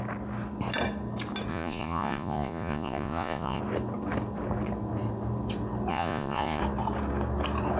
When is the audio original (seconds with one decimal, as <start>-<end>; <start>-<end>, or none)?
0.0-1.5; 3.6-5.9; 6.6-7.8